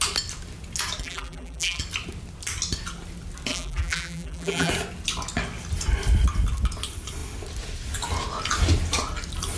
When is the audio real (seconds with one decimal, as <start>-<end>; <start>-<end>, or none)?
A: 0.0-1.0; 1.8-3.5; 4.7-9.6